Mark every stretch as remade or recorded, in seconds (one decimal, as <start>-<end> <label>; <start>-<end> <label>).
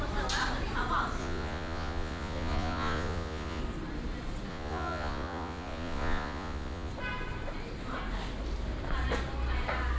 0.0-1.2 recorded; 1.2-3.6 remade; 3.6-4.5 recorded; 4.5-6.9 remade; 6.9-10.0 recorded